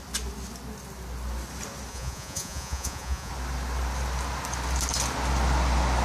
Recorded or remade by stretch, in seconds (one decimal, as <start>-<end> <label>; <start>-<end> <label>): 0.0-1.9 recorded; 1.9-3.3 remade; 3.3-6.0 recorded